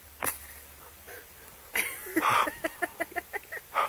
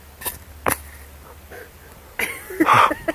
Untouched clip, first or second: second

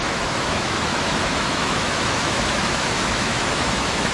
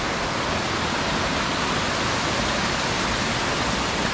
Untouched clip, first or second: second